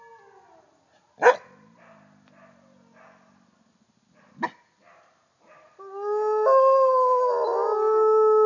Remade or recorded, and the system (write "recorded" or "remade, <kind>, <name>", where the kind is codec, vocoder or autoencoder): recorded